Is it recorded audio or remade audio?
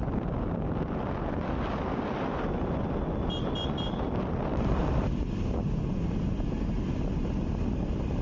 recorded